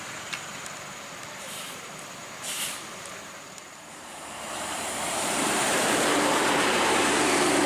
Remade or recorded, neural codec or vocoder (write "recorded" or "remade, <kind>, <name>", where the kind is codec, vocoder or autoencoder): remade, vocoder, BigVGAN v2